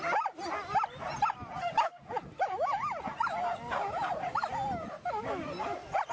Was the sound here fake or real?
real